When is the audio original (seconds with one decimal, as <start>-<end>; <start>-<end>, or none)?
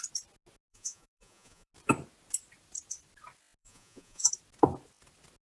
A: 0.0-0.7; 1.7-3.6; 4.3-5.5